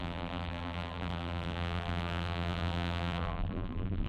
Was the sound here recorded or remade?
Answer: remade